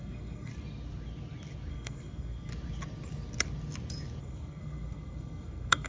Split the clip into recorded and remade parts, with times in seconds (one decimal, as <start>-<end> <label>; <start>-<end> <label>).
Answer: 0.0-0.5 remade; 0.5-1.7 recorded; 1.7-2.5 remade; 2.5-4.2 recorded; 4.2-5.9 remade